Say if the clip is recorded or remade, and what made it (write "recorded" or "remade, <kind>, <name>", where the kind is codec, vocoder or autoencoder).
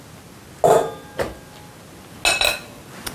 recorded